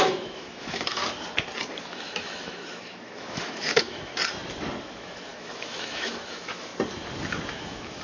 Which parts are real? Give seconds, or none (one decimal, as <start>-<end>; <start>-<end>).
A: 1.0-1.8; 4.1-4.8; 6.7-7.5